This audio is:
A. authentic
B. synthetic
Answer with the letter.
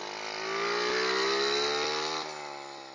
A